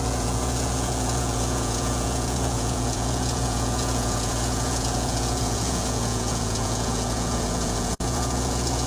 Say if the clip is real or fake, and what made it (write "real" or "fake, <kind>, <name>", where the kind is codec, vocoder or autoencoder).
fake, vocoder, Vocos